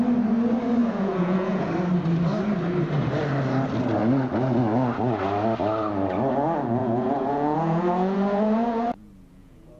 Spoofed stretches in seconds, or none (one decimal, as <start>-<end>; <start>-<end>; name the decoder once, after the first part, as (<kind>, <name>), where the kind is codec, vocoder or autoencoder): 0.8-1.7 (vocoder, Vocos); 6.8-9.8